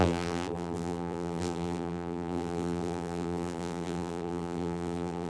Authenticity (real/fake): fake